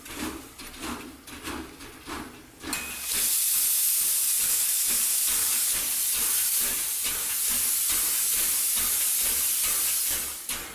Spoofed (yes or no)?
no